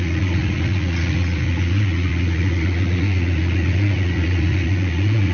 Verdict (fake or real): fake